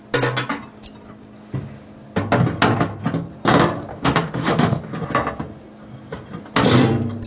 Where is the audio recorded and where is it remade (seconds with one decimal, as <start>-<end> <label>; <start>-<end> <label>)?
0.0-3.9 recorded; 3.9-4.9 remade; 4.9-7.3 recorded